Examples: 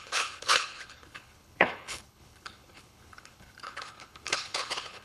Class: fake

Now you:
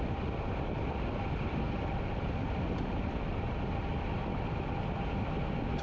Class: real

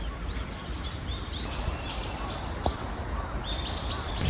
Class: fake